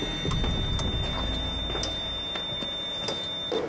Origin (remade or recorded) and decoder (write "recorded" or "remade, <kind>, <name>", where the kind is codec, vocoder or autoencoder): recorded